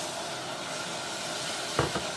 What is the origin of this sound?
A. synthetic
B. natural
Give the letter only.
B